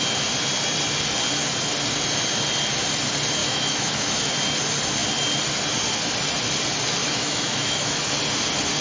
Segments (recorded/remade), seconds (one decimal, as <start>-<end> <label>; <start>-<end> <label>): 0.0-3.4 recorded; 3.4-4.3 remade; 4.3-7.0 recorded; 7.0-8.0 remade; 8.0-8.8 recorded